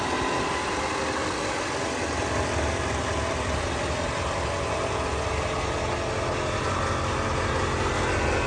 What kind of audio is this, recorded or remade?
recorded